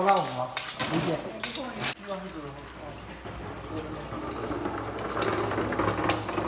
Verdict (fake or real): real